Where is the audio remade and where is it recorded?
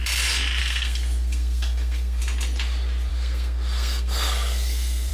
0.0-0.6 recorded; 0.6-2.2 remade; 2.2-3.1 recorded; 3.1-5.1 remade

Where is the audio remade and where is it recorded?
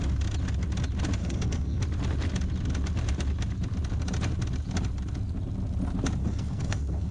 0.0-1.2 recorded; 1.2-1.8 remade; 1.8-6.2 recorded; 6.2-7.1 remade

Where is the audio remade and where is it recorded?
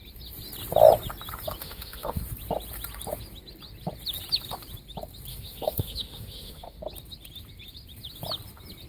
0.0-1.6 recorded; 1.6-2.2 remade; 2.2-5.3 recorded; 5.3-6.8 remade; 6.8-8.9 recorded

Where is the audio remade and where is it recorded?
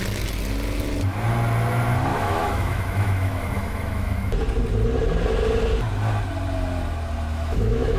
0.0-2.1 recorded; 2.1-4.3 remade; 4.3-7.3 recorded; 7.3-8.0 remade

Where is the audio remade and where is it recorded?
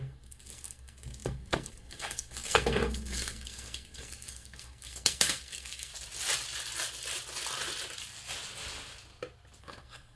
0.0-5.9 remade; 5.9-9.6 recorded; 9.6-10.2 remade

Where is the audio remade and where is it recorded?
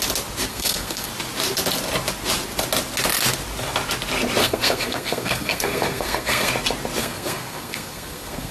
0.0-0.5 recorded; 0.5-1.1 remade; 1.1-4.4 recorded; 4.4-6.5 remade; 6.5-7.0 recorded; 7.0-8.5 remade